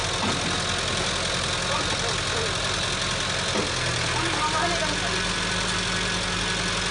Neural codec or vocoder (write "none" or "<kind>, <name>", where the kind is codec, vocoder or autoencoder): none